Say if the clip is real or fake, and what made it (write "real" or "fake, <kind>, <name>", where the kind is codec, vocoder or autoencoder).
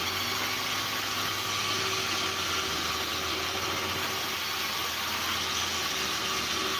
real